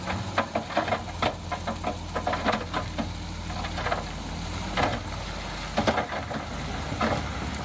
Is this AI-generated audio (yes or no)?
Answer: no